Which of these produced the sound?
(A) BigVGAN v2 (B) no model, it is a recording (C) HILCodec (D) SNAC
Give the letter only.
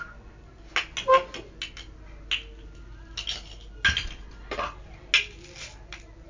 B